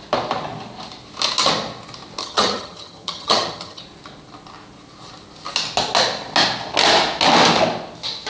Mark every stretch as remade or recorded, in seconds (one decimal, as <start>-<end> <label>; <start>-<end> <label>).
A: 0.0-2.2 recorded; 2.2-3.8 remade; 3.8-8.3 recorded